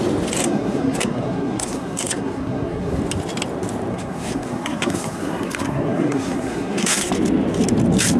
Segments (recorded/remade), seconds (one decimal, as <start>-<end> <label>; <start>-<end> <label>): 0.0-0.4 recorded; 0.4-3.0 remade; 3.0-3.9 recorded; 3.9-7.1 remade; 7.1-8.2 recorded